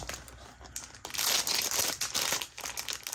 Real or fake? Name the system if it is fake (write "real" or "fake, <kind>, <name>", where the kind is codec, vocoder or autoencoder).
real